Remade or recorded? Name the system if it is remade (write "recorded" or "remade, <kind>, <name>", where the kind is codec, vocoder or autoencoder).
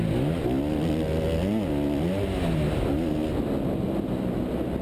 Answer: recorded